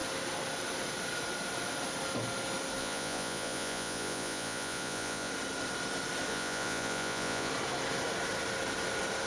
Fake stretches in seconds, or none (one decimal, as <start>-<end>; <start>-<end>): 2.8-5.3; 6.3-7.5

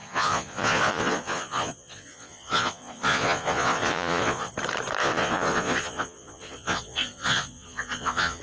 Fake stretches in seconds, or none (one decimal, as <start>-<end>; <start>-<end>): 0.0-4.5; 5.0-8.4

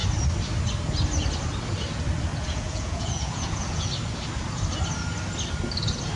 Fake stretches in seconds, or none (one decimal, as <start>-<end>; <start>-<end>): 2.3-3.9

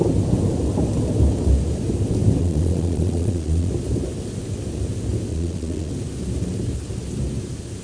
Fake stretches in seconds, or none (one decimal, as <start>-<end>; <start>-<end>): 2.4-3.7; 5.3-5.9

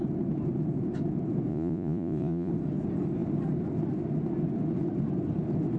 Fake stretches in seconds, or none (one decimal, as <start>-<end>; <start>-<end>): 1.5-2.5